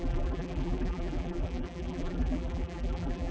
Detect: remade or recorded remade